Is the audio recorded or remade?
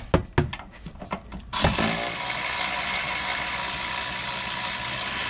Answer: recorded